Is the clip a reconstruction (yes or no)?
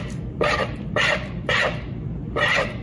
yes